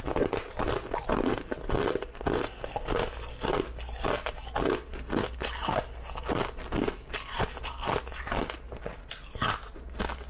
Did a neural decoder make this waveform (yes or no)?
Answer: no